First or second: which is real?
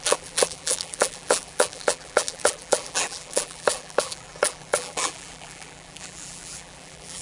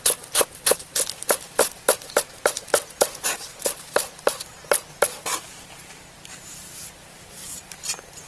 second